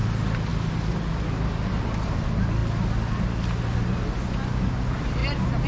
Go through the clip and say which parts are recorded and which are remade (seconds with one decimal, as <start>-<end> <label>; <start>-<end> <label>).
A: 0.0-5.7 recorded